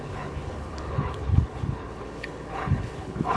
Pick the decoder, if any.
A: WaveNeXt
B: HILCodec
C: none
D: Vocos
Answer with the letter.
B